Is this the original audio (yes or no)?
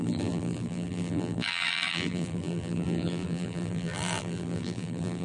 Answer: no